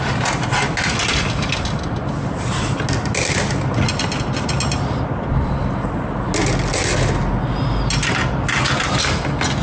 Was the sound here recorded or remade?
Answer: recorded